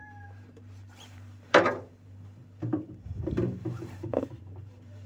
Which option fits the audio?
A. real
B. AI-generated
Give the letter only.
B